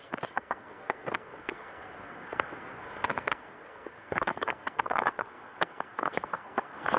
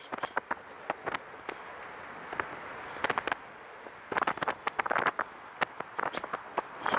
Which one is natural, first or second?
second